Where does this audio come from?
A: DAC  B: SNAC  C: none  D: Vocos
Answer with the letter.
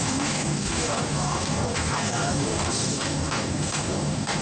A